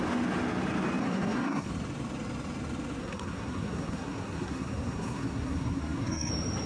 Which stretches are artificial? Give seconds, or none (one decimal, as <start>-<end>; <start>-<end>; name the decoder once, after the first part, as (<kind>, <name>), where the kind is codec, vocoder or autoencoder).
1.0-1.7 (codec, SNAC); 3.0-6.3